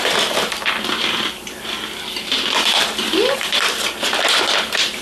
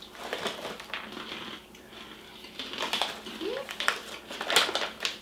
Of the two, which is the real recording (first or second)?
second